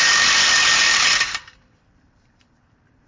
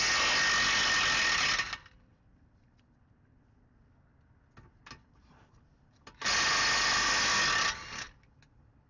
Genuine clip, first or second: second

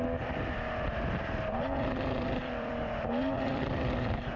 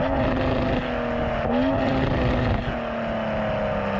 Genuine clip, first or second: second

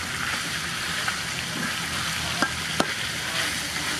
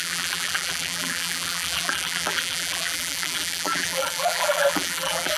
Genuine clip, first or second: first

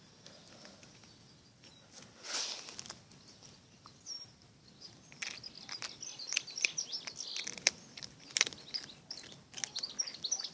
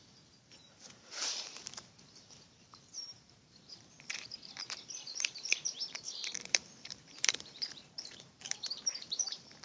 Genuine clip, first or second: first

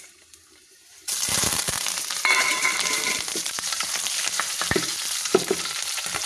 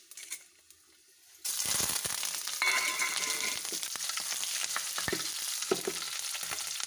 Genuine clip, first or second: second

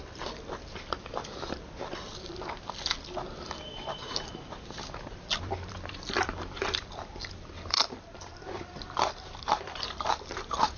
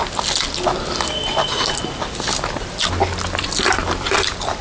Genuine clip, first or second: second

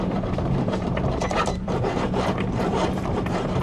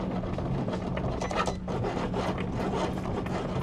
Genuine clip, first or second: second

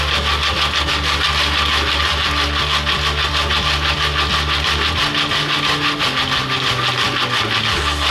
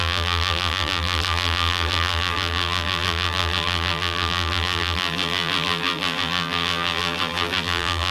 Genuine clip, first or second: first